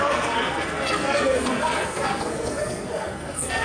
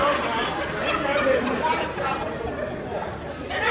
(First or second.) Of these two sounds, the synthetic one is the first